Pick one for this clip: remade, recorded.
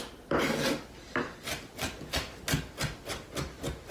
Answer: recorded